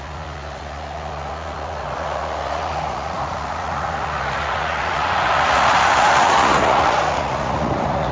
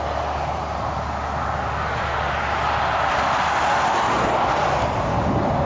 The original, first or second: second